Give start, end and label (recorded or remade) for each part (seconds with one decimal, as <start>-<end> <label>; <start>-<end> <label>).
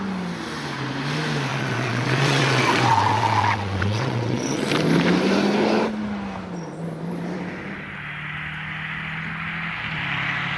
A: 0.0-1.5 recorded; 1.5-4.7 remade; 4.7-10.6 recorded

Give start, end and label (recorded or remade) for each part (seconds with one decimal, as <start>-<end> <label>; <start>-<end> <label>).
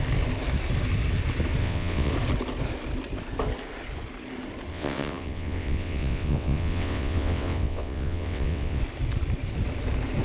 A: 0.0-1.6 recorded; 1.6-2.1 remade; 2.1-4.7 recorded; 4.7-8.8 remade; 8.8-10.2 recorded